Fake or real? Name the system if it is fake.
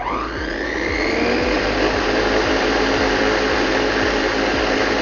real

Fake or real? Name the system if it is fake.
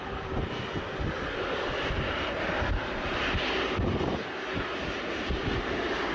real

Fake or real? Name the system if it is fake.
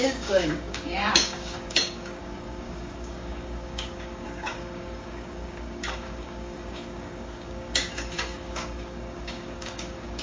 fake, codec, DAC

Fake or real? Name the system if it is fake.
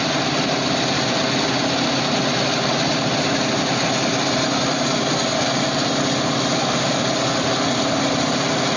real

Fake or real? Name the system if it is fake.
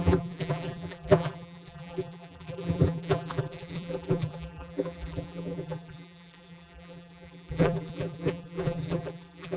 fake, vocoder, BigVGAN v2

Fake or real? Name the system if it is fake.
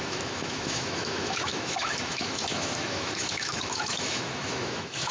fake, autoencoder, DAC-VAE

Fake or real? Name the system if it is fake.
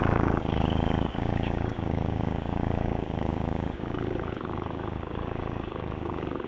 fake, codec, DAC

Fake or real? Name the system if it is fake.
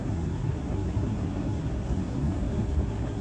fake, codec, SNAC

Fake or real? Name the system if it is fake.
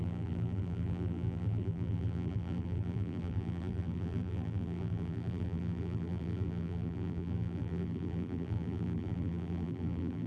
fake, vocoder, BigVGAN v2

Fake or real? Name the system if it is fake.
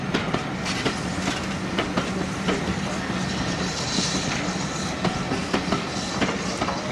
real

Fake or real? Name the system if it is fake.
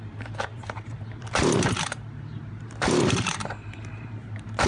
fake, vocoder, BigVGAN v2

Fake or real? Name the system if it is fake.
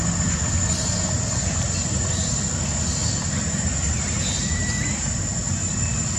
real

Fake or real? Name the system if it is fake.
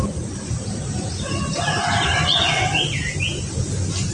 real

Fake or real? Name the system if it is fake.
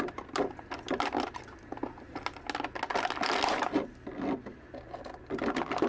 real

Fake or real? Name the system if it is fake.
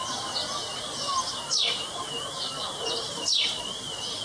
real